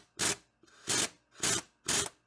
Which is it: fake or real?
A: real